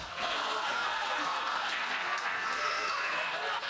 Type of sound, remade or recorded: remade